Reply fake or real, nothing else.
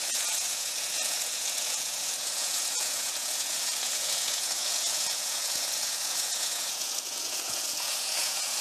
fake